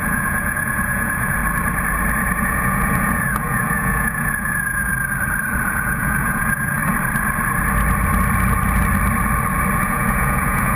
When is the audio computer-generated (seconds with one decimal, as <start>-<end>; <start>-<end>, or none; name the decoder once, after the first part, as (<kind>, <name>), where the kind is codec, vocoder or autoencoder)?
0.0-1.4 (vocoder, Vocos); 2.4-4.9; 5.7-6.8; 9.8-10.8